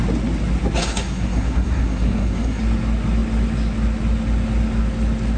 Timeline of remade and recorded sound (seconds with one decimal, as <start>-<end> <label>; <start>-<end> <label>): 0.0-0.8 recorded; 0.8-2.6 remade; 2.6-5.4 recorded